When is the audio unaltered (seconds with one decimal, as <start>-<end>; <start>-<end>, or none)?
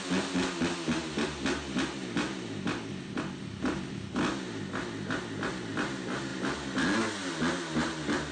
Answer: 0.0-8.3